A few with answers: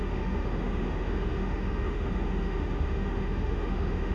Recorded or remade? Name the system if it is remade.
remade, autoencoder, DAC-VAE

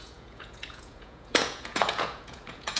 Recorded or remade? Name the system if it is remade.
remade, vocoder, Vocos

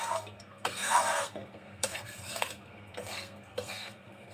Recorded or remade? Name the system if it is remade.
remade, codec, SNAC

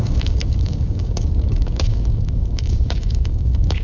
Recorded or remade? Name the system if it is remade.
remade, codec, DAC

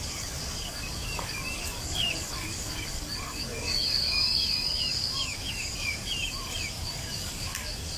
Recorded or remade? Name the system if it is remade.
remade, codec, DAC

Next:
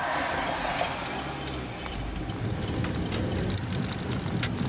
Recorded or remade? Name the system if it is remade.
recorded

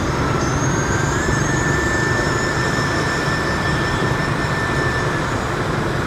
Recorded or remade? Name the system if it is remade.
remade, vocoder, BigVGAN v2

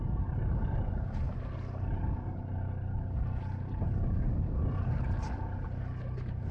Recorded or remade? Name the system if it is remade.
recorded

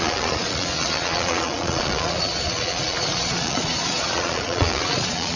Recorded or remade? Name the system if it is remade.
remade, vocoder, Vocos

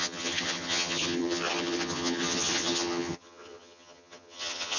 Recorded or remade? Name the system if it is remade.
remade, vocoder, HiFi-GAN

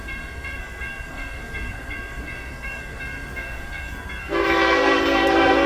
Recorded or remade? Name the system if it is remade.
remade, codec, SNAC